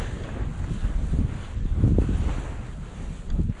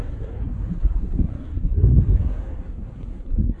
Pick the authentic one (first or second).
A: first